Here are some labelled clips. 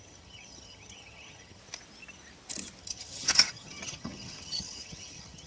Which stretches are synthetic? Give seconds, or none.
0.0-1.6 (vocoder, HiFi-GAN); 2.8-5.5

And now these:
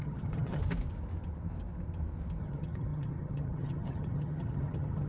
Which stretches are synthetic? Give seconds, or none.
0.0-0.6 (vocoder, HiFi-GAN); 2.4-5.1

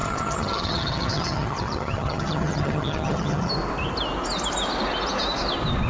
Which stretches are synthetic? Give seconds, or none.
0.0-3.5 (vocoder, HiFi-GAN)

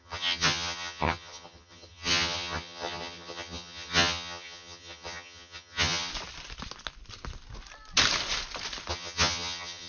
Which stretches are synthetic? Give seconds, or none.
0.0-6.1 (vocoder, HiFi-GAN); 8.9-9.9

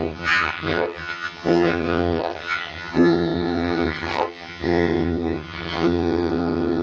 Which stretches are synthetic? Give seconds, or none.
0.0-6.8 (vocoder, HiFi-GAN)

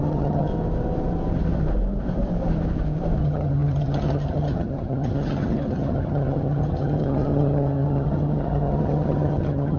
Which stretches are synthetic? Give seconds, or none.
0.0-0.5 (vocoder, HiFi-GAN); 3.2-9.8

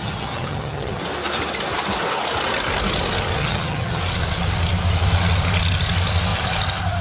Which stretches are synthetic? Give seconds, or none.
0.0-1.0 (vocoder, HiFi-GAN); 3.4-4.0